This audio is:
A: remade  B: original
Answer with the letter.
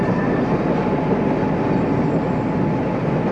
B